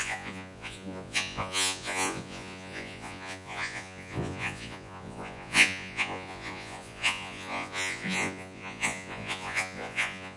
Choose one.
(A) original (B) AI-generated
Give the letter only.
B